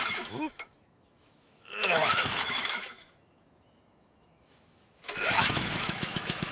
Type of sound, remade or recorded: remade